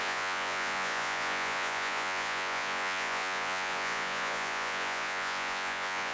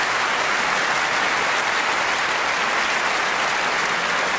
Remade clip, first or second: first